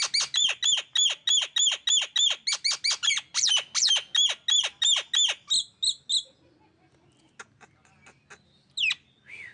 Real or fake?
real